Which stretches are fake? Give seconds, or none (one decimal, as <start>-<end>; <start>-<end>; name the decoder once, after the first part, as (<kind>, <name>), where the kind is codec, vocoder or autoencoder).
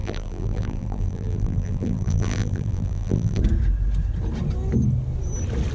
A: 0.0-3.4 (vocoder, BigVGAN v2)